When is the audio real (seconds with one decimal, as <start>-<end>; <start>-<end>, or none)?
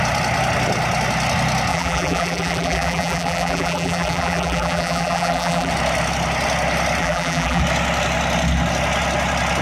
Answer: 0.0-1.7; 5.7-7.0; 7.6-9.6